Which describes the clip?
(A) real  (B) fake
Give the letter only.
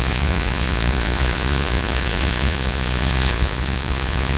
B